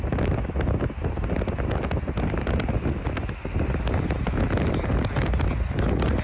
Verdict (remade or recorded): recorded